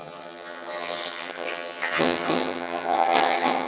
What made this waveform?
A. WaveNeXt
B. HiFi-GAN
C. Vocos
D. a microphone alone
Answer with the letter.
B